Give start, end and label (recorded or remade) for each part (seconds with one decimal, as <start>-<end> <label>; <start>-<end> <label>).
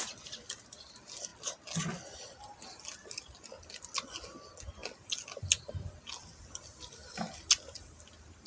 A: 0.0-8.5 recorded